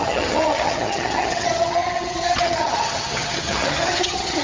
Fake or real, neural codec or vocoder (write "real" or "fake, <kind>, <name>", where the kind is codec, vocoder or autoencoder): fake, vocoder, HiFi-GAN